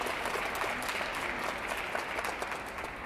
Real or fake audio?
real